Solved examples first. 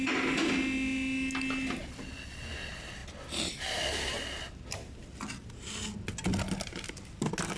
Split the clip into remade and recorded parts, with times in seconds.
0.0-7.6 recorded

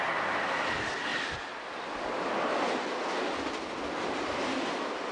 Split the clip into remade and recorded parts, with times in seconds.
0.0-5.1 recorded

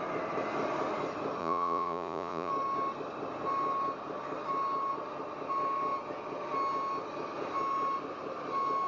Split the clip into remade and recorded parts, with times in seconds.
0.0-1.4 recorded; 1.4-2.5 remade; 2.5-8.9 recorded

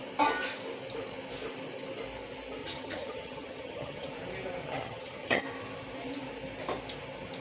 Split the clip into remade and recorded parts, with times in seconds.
0.0-2.6 recorded; 2.6-4.1 remade; 4.1-4.6 recorded; 4.6-5.4 remade; 5.4-7.4 recorded

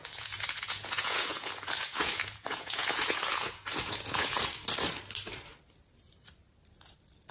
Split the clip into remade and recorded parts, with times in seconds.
0.0-4.4 remade; 4.4-7.3 recorded

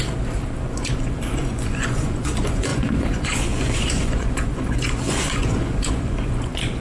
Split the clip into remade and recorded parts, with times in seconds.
0.0-0.6 recorded; 0.6-6.8 remade

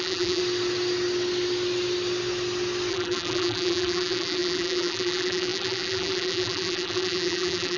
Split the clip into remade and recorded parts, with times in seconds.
0.0-0.4 remade; 0.4-2.9 recorded; 2.9-7.8 remade